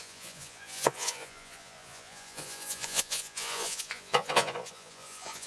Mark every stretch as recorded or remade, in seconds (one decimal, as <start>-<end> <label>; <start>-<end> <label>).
0.0-5.5 remade